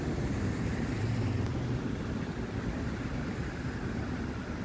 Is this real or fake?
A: real